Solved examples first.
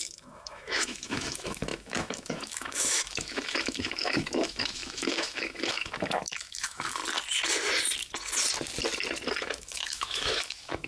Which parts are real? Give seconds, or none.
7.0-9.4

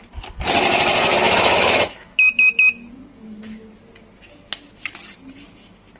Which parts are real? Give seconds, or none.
0.0-1.0; 3.6-6.0

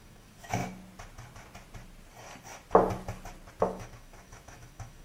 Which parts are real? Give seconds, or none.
0.6-3.6

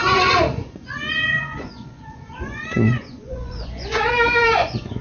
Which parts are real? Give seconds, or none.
2.6-3.0

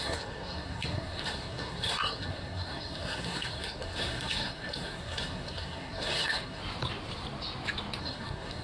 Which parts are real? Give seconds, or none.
6.6-8.0

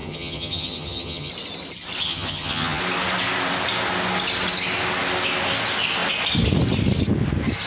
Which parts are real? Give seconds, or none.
1.3-2.0; 2.8-7.7

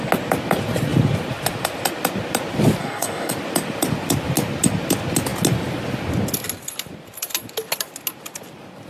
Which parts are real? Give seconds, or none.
0.0-2.8; 3.3-8.9

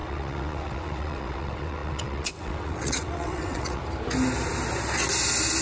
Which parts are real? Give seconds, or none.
3.8-5.6